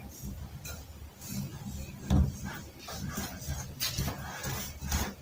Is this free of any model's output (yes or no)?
yes